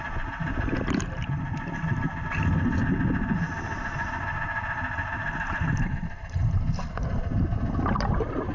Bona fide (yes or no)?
yes